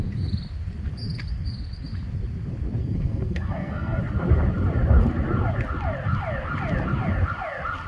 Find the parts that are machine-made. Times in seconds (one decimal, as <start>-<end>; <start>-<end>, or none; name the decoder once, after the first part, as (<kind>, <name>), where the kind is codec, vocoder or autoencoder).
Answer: 2.8-4.0 (codec, SNAC)